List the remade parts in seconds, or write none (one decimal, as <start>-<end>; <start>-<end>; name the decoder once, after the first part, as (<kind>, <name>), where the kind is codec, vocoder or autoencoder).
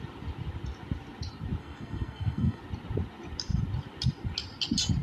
1.6-2.6 (codec, SNAC)